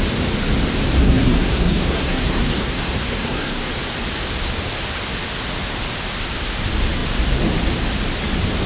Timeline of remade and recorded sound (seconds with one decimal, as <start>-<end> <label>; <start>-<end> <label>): 0.0-1.0 recorded; 1.0-3.7 remade; 3.7-8.7 recorded